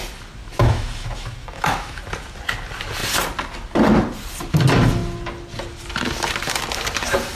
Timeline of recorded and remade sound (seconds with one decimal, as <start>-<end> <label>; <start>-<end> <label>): 0.0-0.6 recorded; 0.6-2.0 remade; 2.0-7.3 recorded